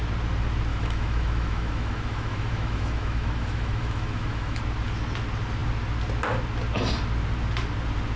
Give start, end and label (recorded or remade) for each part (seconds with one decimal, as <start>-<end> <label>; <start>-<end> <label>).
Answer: 0.0-0.7 recorded; 0.7-4.6 remade; 4.6-8.2 recorded